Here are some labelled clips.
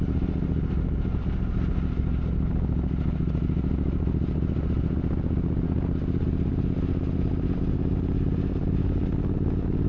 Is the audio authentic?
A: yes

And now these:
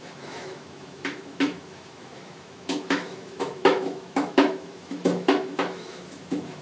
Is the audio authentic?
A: no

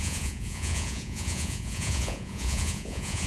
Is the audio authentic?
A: no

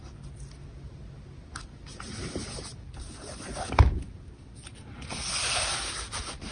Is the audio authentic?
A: yes